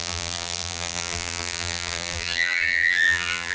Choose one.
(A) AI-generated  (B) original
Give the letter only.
A